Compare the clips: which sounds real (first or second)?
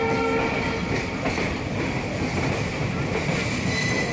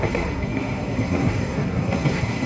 first